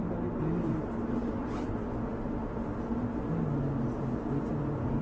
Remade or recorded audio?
recorded